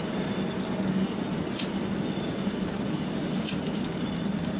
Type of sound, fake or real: real